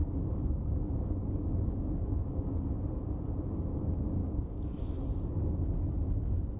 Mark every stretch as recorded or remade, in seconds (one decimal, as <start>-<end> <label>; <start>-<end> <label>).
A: 0.0-2.7 remade; 2.7-4.2 recorded; 4.2-4.8 remade; 4.8-6.6 recorded